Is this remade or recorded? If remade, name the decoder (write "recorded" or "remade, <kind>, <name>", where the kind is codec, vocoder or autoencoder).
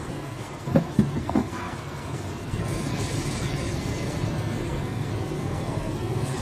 remade, codec, SNAC